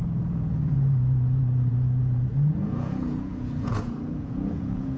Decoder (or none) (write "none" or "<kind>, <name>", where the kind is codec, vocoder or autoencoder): vocoder, Vocos